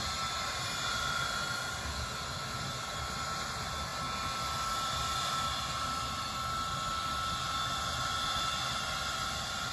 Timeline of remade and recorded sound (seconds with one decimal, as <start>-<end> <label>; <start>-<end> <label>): 0.0-9.7 recorded